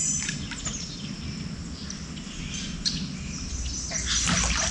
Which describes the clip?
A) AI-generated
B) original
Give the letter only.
B